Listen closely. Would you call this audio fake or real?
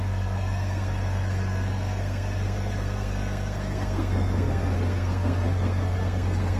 fake